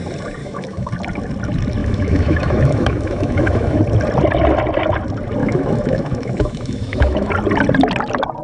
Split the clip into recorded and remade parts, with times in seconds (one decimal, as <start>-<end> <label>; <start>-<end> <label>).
0.0-0.4 recorded; 0.4-0.9 remade; 0.9-1.8 recorded; 1.8-3.8 remade; 3.8-5.4 recorded; 5.4-7.3 remade; 7.3-8.4 recorded